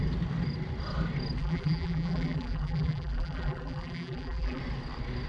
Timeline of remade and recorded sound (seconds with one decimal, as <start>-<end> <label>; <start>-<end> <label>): 0.0-1.4 recorded; 1.4-4.6 remade; 4.6-5.3 recorded